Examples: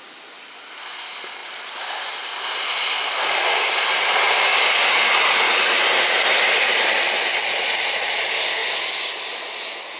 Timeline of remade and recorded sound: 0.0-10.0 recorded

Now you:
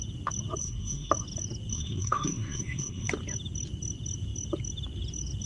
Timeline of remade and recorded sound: 0.0-0.6 recorded; 0.6-1.1 remade; 1.1-1.7 recorded; 1.7-3.1 remade; 3.1-5.5 recorded

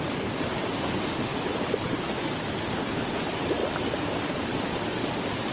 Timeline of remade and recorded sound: 0.0-5.5 recorded